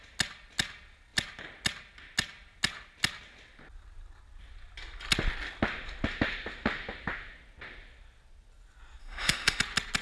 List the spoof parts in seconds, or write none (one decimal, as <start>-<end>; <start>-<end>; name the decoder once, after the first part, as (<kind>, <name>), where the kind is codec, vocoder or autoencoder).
9.0-9.6 (autoencoder, DAC-VAE)